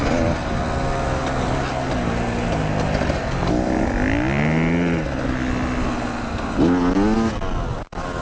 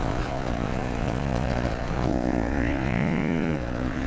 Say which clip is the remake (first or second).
second